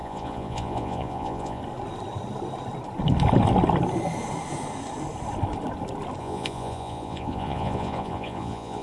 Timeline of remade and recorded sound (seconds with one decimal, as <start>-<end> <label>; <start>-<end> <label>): 0.0-1.6 remade; 1.6-6.2 recorded; 6.2-8.8 remade